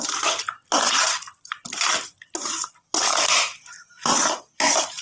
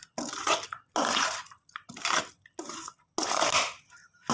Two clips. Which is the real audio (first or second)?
second